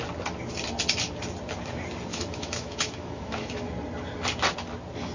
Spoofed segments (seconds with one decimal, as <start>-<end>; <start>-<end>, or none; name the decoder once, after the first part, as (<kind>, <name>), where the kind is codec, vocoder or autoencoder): 2.1-3.7 (autoencoder, DAC-VAE)